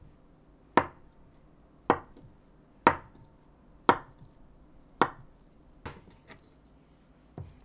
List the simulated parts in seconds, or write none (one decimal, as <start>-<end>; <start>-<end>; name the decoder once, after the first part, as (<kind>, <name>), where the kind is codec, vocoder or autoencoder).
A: none